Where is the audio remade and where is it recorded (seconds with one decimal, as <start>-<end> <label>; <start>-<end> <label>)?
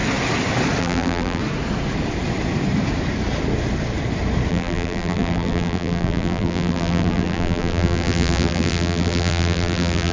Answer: 0.0-0.8 recorded; 0.8-1.4 remade; 1.4-4.5 recorded; 4.5-10.1 remade